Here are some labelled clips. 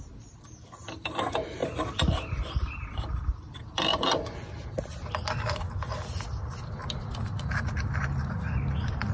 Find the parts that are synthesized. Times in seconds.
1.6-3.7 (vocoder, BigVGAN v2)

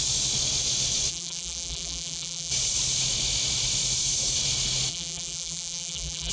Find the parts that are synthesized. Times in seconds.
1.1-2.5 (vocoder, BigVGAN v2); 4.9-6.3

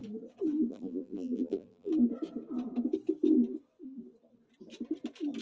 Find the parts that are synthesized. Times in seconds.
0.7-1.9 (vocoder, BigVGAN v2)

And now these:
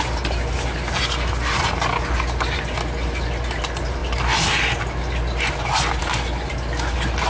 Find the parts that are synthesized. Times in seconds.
none